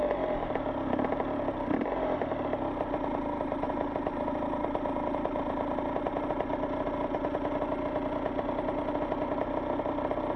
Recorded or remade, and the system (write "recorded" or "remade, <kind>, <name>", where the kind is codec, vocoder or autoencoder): recorded